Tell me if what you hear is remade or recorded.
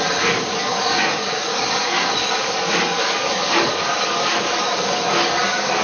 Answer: remade